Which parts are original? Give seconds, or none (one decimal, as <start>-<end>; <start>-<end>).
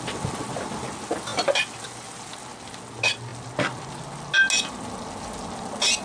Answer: 0.0-6.0